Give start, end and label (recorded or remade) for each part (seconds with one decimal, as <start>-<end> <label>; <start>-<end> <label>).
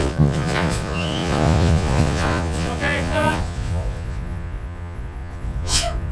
0.0-6.1 remade